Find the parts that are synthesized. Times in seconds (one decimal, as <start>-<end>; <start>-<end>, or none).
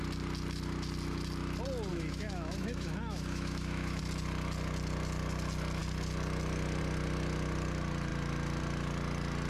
1.9-4.0